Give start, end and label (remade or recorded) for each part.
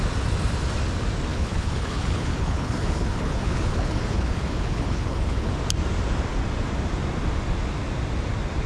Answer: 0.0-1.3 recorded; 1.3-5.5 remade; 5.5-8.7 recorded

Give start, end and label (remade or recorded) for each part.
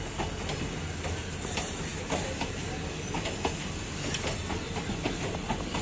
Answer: 0.0-5.8 recorded